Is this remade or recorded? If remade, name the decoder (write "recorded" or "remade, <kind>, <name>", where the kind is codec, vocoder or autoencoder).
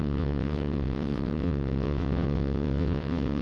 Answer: remade, vocoder, WaveNeXt